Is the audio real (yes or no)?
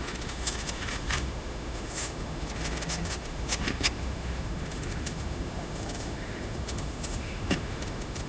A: no